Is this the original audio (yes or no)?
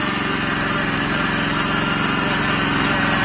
yes